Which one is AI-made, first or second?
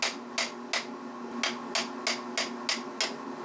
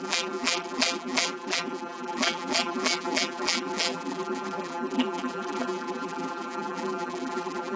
second